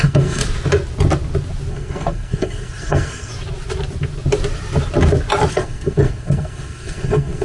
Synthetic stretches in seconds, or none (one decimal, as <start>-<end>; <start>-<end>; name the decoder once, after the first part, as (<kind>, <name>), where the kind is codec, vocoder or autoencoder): 0.0-0.4 (codec, SNAC); 1.7-3.3; 5.5-7.4